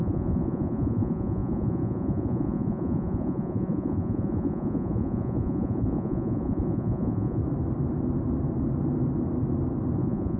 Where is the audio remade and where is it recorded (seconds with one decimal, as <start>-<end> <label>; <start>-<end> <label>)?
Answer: 0.0-7.4 remade; 7.4-10.0 recorded; 10.0-10.4 remade